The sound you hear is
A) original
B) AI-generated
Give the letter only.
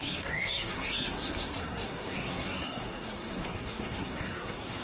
B